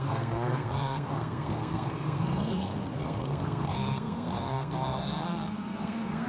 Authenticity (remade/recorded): remade